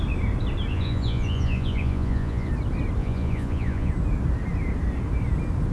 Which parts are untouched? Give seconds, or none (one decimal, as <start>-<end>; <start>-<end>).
0.0-0.7; 2.5-3.0; 3.9-5.7